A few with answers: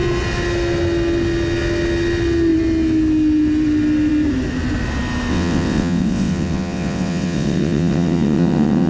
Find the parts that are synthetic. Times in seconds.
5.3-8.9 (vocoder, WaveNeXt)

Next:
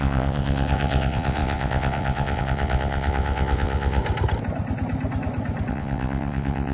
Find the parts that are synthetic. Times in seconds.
0.0-4.0 (vocoder, WaveNeXt); 5.7-6.7

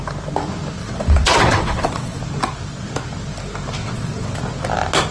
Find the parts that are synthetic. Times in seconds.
0.8-2.2 (vocoder, WaveNeXt); 3.8-4.4

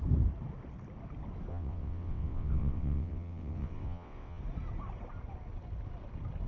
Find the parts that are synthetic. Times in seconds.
1.5-4.4 (vocoder, WaveNeXt)

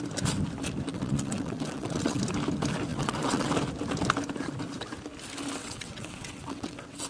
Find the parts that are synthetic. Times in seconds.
0.9-2.2 (vocoder, WaveNeXt); 2.9-3.5; 5.6-7.1

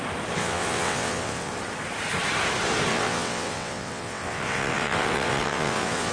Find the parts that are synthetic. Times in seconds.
0.4-1.5 (vocoder, WaveNeXt); 2.9-6.1

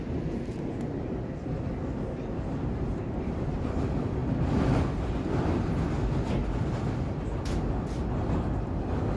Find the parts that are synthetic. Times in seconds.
none

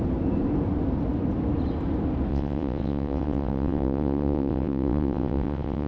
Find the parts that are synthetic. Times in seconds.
2.3-5.9 (vocoder, WaveNeXt)